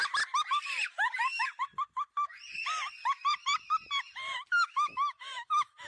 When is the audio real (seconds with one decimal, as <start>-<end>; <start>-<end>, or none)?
0.0-4.5